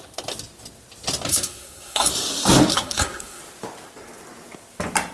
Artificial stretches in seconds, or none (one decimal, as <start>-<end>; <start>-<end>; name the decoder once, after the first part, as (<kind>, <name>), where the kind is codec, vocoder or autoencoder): 1.3-2.1 (codec, SNAC); 2.7-3.4